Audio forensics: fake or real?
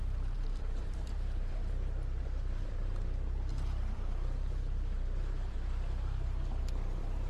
fake